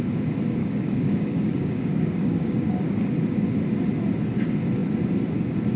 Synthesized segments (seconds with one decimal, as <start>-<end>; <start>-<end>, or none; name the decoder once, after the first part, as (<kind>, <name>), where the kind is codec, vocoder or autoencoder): 0.6-3.1 (codec, DAC)